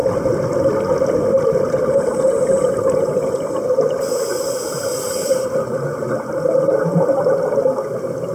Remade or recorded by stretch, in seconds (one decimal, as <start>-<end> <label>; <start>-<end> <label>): 0.0-4.3 recorded; 4.3-7.2 remade; 7.2-8.3 recorded